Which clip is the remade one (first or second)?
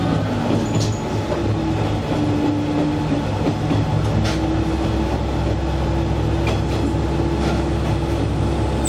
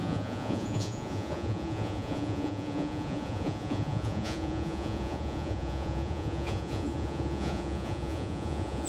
second